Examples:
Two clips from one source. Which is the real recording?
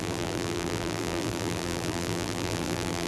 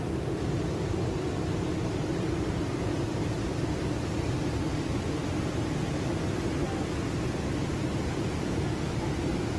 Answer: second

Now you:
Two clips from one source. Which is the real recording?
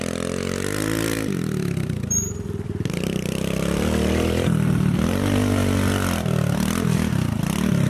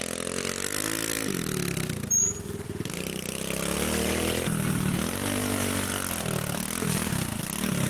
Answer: second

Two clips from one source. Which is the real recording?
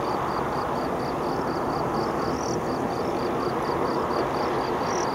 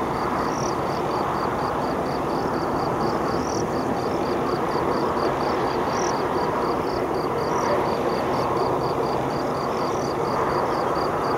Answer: first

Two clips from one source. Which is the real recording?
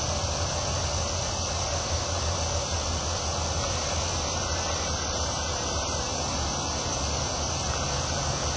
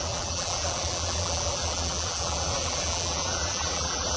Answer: first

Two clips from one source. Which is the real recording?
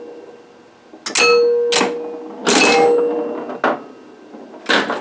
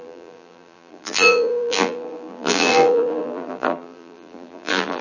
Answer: first